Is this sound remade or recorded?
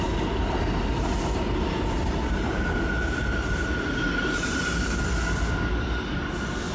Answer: recorded